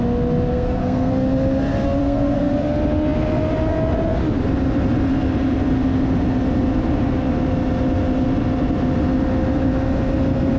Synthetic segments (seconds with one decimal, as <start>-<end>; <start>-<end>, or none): 0.5-1.1; 2.0-2.5